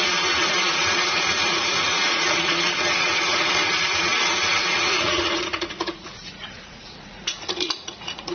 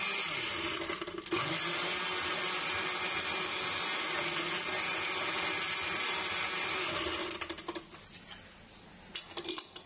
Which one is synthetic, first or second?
first